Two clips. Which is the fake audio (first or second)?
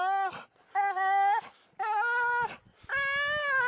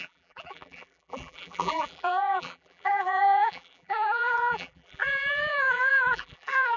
second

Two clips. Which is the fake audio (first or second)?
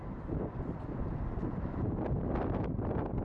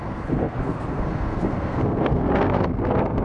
second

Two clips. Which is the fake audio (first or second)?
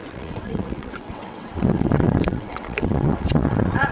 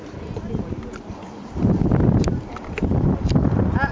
first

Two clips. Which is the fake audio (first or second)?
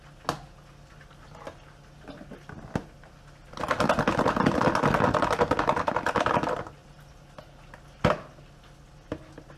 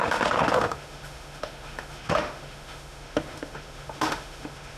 second